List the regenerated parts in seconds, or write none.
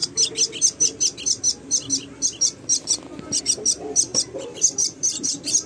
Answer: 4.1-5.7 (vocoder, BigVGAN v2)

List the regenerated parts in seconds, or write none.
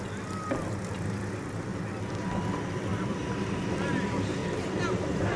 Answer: 2.9-3.7 (vocoder, BigVGAN v2); 4.4-5.0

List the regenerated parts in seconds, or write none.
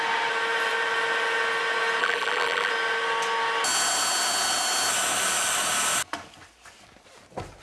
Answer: 2.0-2.7 (vocoder, BigVGAN v2)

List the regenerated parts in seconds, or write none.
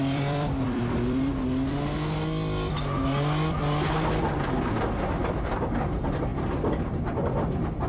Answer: 0.0-1.3 (vocoder, BigVGAN v2); 5.1-7.9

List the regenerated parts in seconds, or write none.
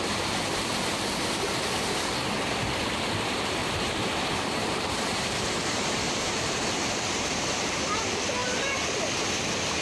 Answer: 3.6-8.0 (vocoder, BigVGAN v2)